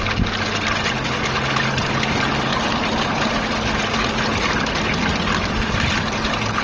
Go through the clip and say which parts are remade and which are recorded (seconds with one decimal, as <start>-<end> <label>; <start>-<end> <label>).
0.0-6.6 recorded